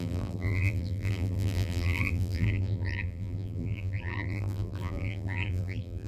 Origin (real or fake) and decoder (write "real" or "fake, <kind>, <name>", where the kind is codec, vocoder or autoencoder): fake, vocoder, BigVGAN v2